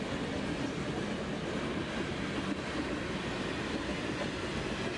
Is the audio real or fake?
real